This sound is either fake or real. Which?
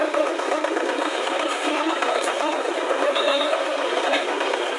fake